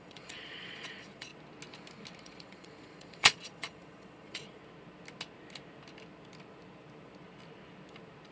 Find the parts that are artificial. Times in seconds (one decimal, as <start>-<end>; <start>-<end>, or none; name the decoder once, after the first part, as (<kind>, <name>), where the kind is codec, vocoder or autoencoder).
0.0-1.3 (vocoder, Vocos); 2.2-4.6